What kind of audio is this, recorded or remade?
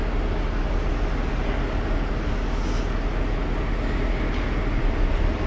recorded